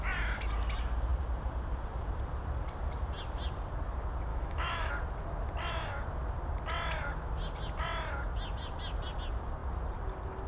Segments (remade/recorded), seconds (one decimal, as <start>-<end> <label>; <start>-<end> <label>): 0.0-4.3 recorded; 4.3-4.9 remade; 4.9-10.5 recorded